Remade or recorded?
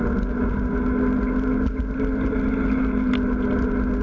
recorded